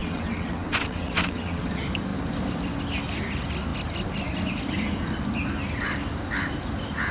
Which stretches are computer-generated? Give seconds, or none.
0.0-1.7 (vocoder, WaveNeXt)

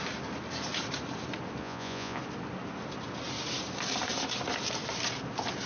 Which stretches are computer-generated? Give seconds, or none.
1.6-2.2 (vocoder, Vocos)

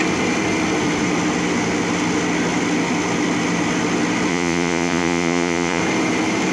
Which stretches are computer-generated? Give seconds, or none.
4.3-5.8 (vocoder, Vocos)

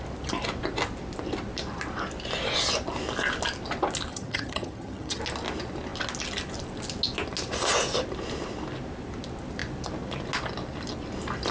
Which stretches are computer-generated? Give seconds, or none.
4.1-5.2 (vocoder, HiFi-GAN)